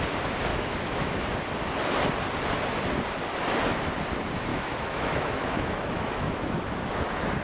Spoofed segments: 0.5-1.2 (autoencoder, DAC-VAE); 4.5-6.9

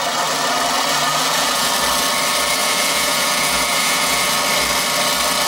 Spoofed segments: 1.1-1.7 (vocoder, Vocos); 2.6-4.3

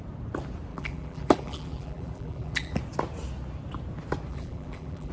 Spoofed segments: 0.7-2.8 (vocoder, BigVGAN v2); 4.3-5.1

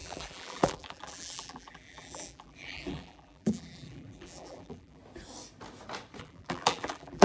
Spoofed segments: 0.0-5.0 (vocoder, BigVGAN v2); 6.2-7.2

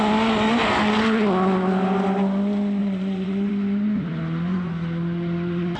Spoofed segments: 2.8-3.5 (vocoder, Vocos)

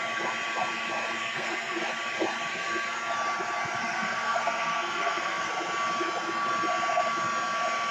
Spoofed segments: 1.2-1.9 (codec, SNAC); 2.5-3.0; 3.8-5.5

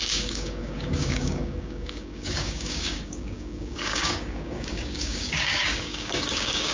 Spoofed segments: 0.0-6.7 (codec, DAC)